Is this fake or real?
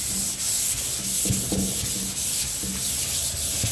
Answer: real